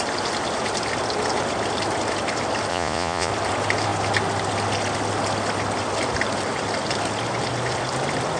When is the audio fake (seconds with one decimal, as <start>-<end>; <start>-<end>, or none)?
2.7-3.3